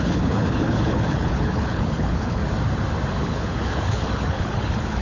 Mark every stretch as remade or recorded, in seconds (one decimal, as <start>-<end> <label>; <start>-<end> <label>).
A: 0.0-2.4 remade; 2.4-3.2 recorded; 3.2-5.0 remade